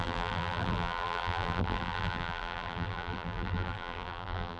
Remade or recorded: remade